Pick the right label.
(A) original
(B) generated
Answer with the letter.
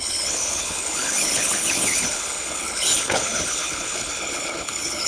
B